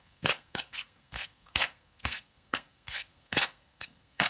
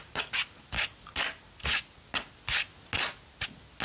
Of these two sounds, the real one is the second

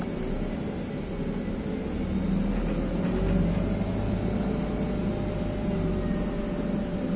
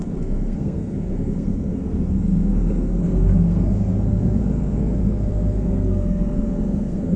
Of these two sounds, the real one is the first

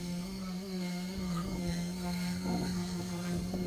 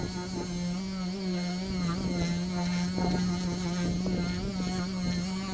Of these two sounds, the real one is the second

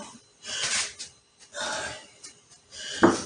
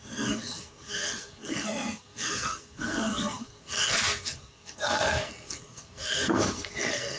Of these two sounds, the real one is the first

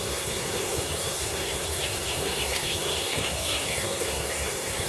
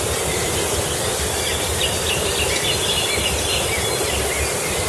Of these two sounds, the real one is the second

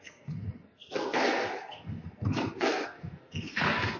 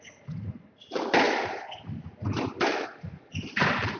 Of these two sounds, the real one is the second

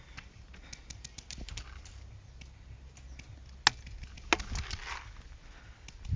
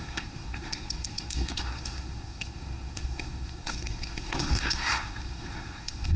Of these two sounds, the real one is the first